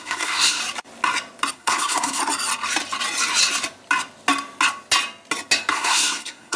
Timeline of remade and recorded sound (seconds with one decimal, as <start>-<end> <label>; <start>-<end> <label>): 0.0-0.6 remade; 0.6-1.5 recorded; 1.5-2.2 remade; 2.2-5.7 recorded; 5.7-6.6 remade